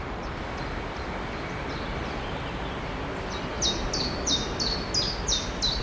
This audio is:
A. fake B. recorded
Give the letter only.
B